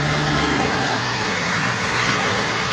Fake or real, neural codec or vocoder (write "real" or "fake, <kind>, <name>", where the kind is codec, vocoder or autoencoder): fake, codec, SNAC